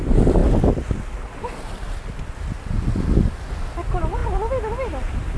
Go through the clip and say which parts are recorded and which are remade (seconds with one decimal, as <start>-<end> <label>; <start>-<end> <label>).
0.0-5.4 recorded